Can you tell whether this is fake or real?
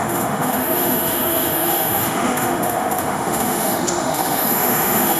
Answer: fake